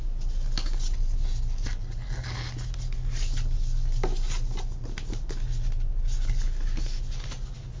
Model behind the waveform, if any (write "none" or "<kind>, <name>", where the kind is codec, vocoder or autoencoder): none